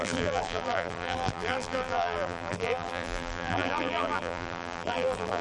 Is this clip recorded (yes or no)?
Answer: no